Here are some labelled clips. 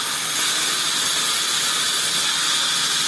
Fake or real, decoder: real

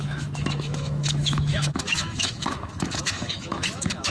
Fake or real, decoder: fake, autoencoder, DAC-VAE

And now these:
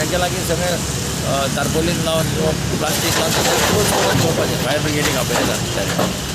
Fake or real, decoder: real